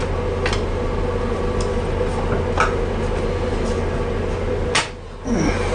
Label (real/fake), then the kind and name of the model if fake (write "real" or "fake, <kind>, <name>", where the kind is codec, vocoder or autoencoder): real